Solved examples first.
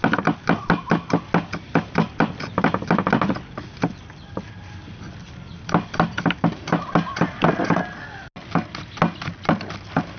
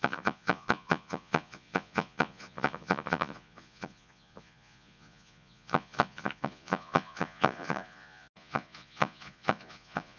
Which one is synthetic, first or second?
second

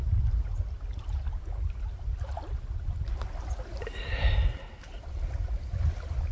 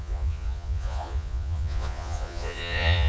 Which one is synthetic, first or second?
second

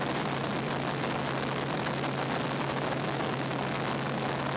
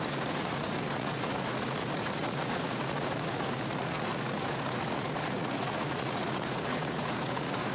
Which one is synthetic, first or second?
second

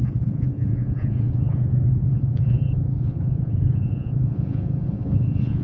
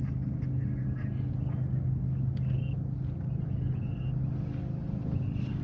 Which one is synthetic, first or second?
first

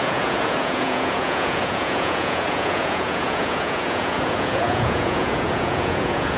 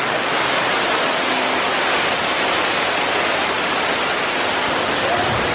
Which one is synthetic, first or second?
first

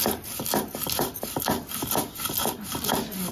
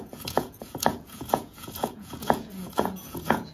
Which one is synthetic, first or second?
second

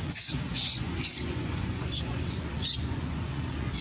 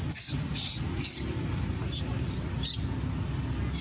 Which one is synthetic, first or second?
first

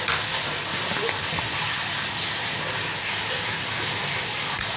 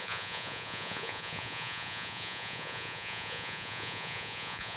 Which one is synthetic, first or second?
second